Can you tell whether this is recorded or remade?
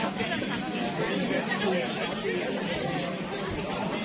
recorded